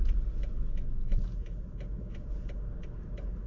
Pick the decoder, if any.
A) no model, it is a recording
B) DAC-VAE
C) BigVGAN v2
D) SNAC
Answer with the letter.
A